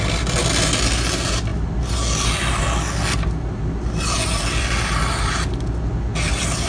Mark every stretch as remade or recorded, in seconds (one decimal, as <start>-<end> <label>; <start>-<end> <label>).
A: 0.0-6.7 recorded